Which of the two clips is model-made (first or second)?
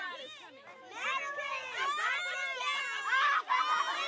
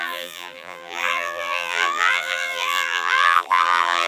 second